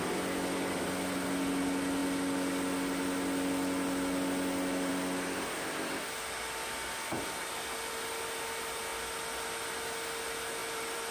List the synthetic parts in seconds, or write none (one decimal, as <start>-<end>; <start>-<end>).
10.6-11.1